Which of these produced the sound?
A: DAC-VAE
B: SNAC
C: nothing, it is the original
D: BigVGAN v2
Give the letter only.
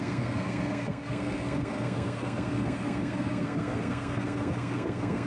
B